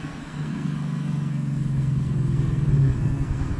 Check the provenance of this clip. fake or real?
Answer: fake